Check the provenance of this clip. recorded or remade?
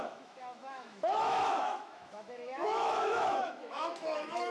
remade